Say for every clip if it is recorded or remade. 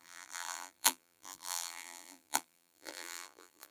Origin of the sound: remade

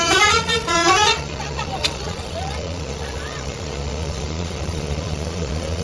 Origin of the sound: remade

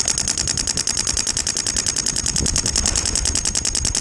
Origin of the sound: recorded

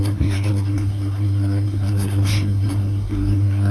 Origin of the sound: remade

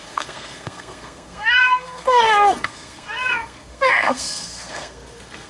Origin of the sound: remade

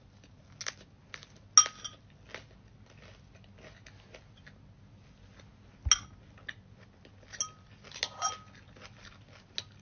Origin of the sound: recorded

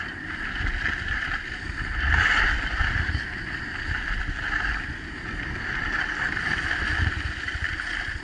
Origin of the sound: recorded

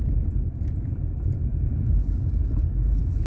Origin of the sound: remade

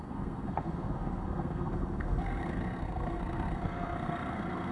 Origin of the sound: remade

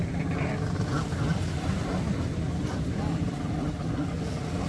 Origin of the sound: recorded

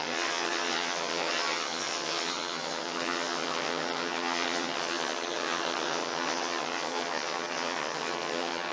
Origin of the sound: remade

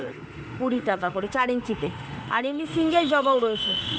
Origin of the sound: remade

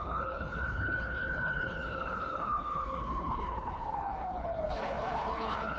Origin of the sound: remade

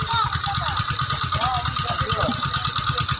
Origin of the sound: recorded